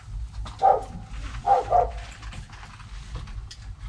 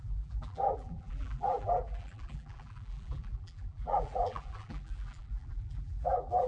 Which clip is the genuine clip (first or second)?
first